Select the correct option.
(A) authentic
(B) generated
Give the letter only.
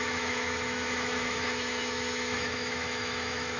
B